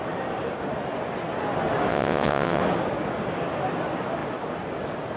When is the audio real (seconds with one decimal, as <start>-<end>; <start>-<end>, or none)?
0.0-1.9; 2.6-5.2